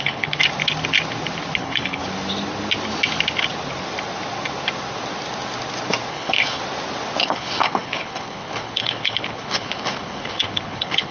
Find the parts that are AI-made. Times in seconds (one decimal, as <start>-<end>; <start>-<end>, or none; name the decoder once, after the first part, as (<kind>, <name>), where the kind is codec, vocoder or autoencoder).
0.0-0.4 (codec, HILCodec); 1.6-2.0; 6.1-6.6; 7.2-11.1